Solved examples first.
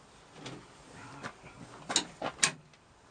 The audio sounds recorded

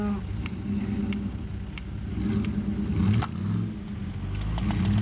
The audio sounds recorded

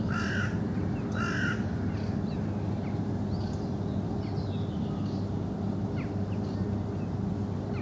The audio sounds recorded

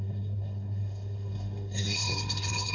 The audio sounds remade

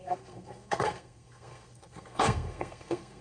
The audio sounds remade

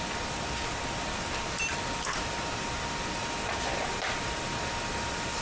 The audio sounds recorded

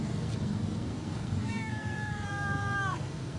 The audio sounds remade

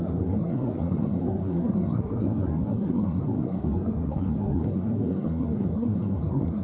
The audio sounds remade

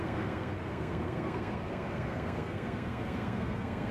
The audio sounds remade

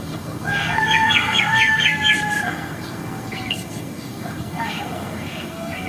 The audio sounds remade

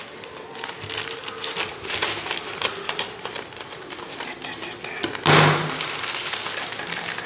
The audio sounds recorded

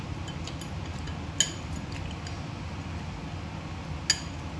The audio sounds recorded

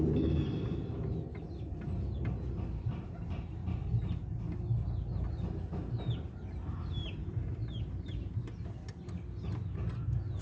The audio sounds recorded